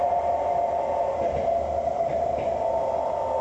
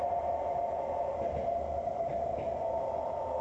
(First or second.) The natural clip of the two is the first